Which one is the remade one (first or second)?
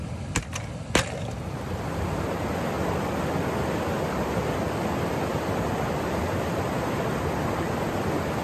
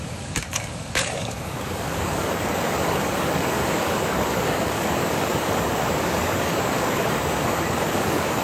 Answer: second